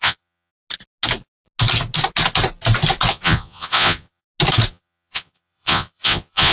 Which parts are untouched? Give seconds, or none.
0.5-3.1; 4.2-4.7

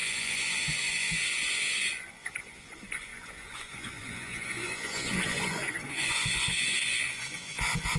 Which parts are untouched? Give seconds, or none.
none